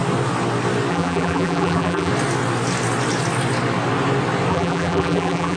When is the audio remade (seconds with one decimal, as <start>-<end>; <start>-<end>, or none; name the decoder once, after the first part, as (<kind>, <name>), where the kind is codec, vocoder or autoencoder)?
0.9-2.1 (vocoder, BigVGAN v2); 4.5-5.6